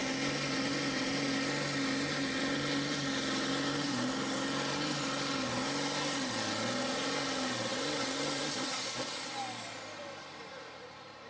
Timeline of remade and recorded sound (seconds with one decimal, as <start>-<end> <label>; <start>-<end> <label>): 0.0-7.7 recorded; 7.7-10.4 remade; 10.4-11.3 recorded

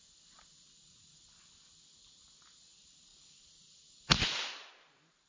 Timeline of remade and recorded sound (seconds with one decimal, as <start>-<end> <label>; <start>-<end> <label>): 0.0-3.1 recorded; 3.1-4.7 remade; 4.7-5.3 recorded

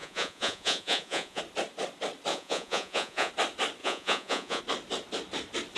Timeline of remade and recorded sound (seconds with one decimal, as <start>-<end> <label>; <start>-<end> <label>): 0.0-1.4 remade; 1.4-2.3 recorded; 2.3-3.3 remade; 3.3-3.8 recorded; 3.8-4.6 remade; 4.6-5.8 recorded

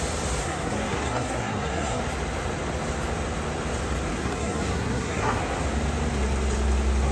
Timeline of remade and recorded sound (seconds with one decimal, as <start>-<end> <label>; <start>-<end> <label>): 0.0-0.4 recorded; 0.4-2.0 remade; 2.0-4.1 recorded; 4.1-5.4 remade; 5.4-7.1 recorded

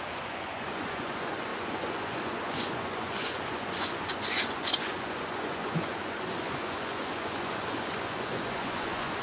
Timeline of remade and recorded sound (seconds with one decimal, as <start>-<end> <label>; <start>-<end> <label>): 0.0-9.2 remade